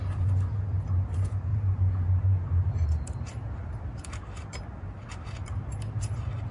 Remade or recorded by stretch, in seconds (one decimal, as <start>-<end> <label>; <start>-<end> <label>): 0.0-6.5 remade